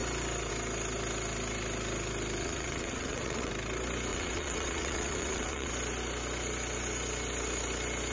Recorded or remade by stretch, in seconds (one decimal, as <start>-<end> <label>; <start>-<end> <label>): 0.0-2.4 recorded; 2.4-3.5 remade; 3.5-4.1 recorded; 4.1-5.7 remade; 5.7-8.1 recorded